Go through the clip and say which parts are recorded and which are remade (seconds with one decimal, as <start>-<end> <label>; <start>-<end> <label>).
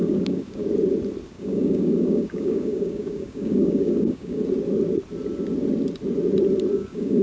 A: 0.0-0.6 remade; 0.6-1.3 recorded; 1.3-4.4 remade; 4.4-6.7 recorded; 6.7-7.2 remade